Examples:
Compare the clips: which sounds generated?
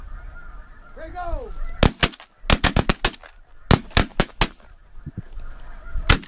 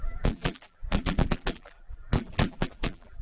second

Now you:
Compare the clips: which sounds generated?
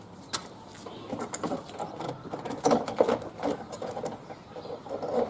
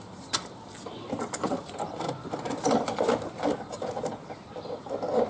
second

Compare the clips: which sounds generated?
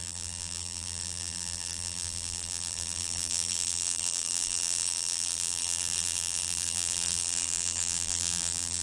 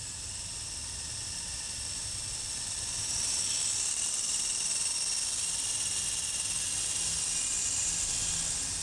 first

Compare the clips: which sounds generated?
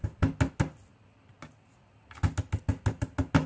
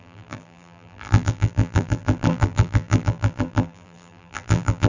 second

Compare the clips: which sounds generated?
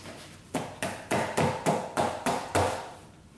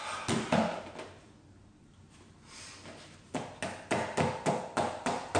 first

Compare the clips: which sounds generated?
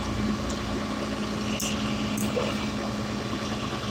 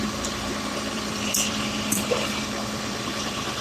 second